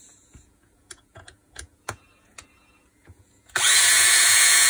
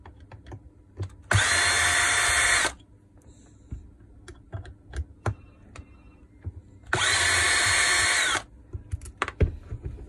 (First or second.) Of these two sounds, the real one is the second